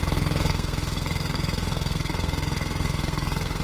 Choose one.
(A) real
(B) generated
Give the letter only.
B